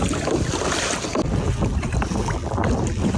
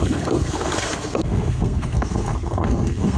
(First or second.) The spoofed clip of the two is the second